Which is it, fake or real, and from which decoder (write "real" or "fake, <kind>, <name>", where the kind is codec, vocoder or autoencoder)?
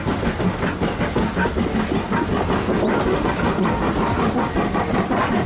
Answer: real